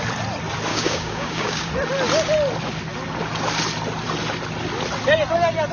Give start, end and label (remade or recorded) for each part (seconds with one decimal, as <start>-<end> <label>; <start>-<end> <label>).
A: 0.0-0.7 recorded; 0.7-1.7 remade; 1.7-5.7 recorded